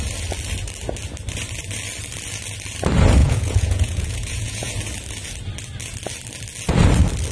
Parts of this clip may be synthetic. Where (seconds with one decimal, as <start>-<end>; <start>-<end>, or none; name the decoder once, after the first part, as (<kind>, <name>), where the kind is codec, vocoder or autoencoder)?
3.2-4.7 (vocoder, Vocos)